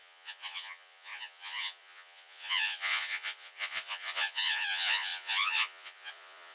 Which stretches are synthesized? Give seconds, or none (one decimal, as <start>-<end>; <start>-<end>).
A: 0.0-6.5